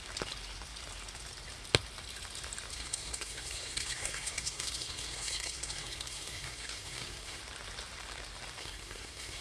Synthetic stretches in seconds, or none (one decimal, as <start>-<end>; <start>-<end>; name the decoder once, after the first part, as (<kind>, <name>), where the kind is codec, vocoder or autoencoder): 2.7-7.4 (codec, SNAC); 8.6-9.4